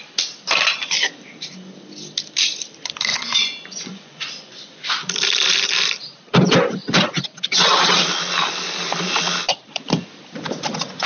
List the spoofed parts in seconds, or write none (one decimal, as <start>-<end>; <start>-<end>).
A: 3.1-4.9